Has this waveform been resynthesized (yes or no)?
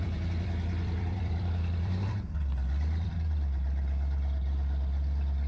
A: yes